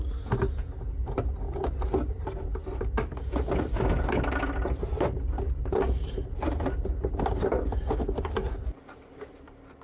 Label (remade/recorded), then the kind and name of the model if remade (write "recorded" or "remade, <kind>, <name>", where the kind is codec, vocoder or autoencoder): recorded